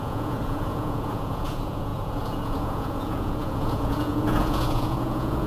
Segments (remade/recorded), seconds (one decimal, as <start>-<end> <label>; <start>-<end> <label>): 0.0-5.5 remade